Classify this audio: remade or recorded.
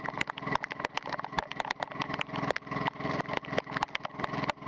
recorded